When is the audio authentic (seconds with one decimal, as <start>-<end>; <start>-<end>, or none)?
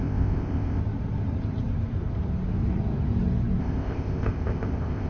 0.8-3.6